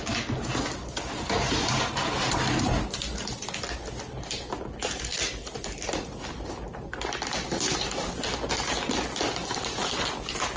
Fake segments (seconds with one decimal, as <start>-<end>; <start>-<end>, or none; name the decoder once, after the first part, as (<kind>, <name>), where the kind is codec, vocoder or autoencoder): none